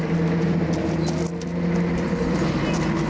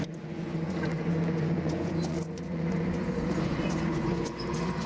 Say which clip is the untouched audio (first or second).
first